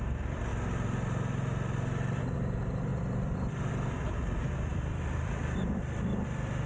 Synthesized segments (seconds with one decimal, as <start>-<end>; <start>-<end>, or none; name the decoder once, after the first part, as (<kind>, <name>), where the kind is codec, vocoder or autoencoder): 0.0-0.5 (vocoder, BigVGAN v2); 2.2-6.7